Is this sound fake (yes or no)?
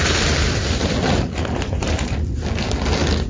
no